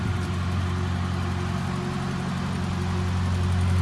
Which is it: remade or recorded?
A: recorded